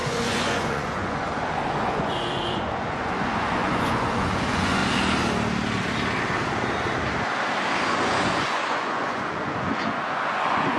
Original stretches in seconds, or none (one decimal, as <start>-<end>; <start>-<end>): 4.8-7.9